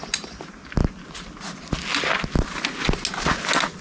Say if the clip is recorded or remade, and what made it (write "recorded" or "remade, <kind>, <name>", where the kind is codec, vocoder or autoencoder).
recorded